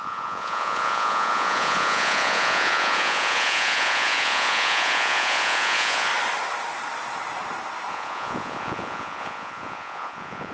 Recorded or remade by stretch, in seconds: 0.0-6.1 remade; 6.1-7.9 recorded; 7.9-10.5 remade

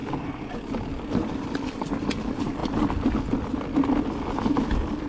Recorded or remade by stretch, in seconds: 0.0-5.1 recorded

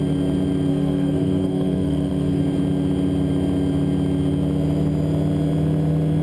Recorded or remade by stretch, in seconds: 0.0-0.7 recorded; 0.7-2.4 remade; 2.4-6.2 recorded

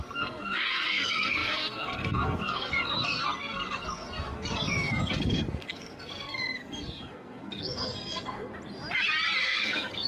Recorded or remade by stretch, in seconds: 0.0-8.5 remade; 8.5-9.4 recorded; 9.4-10.1 remade

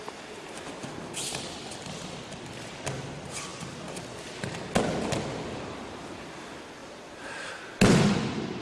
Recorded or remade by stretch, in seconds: 0.0-6.8 recorded; 6.8-7.6 remade; 7.6-8.6 recorded

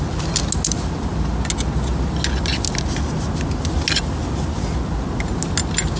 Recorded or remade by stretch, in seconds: 0.0-6.0 recorded

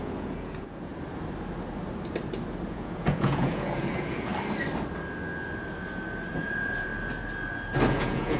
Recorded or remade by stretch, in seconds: 0.0-0.9 remade; 0.9-2.7 recorded; 2.7-4.3 remade; 4.3-6.3 recorded; 6.3-6.9 remade; 6.9-7.9 recorded; 7.9-8.4 remade